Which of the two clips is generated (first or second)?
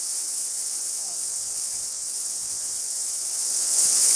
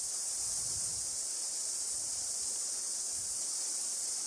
first